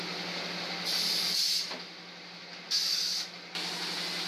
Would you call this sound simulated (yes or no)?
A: no